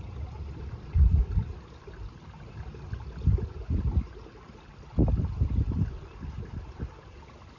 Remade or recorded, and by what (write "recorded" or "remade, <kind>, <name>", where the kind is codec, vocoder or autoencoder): recorded